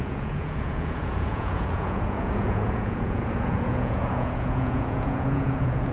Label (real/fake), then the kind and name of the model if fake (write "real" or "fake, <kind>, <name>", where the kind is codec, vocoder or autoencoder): fake, vocoder, Vocos